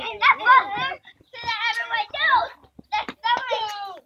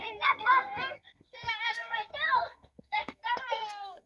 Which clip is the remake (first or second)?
second